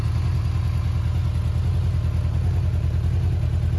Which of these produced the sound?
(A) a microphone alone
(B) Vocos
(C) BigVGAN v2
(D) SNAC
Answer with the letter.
A